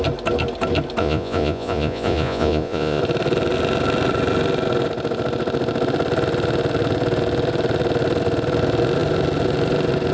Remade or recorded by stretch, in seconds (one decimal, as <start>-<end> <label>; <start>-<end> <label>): 0.0-1.0 recorded; 1.0-3.0 remade; 3.0-10.1 recorded